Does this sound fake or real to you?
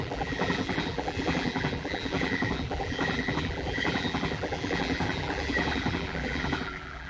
fake